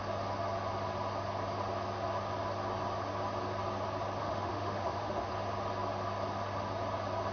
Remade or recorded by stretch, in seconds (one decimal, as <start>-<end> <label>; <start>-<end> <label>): 0.0-4.2 recorded; 4.2-5.3 remade; 5.3-7.3 recorded